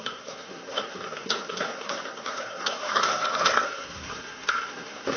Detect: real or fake fake